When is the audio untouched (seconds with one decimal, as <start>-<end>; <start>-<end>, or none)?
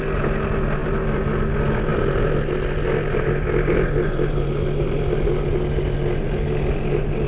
0.0-7.3